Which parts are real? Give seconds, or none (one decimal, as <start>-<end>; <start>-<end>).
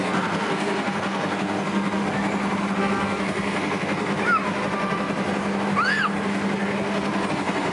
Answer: 2.0-2.8; 4.1-7.3